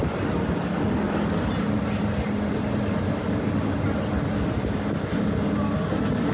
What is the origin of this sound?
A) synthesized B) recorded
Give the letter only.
B